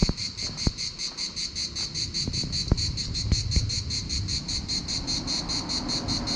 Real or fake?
real